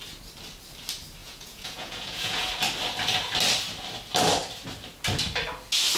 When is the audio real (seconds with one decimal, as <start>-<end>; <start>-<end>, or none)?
0.0-1.2; 2.5-6.0